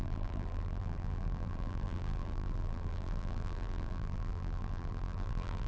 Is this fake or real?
fake